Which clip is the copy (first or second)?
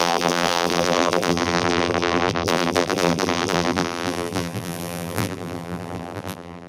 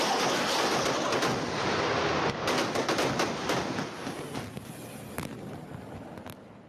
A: first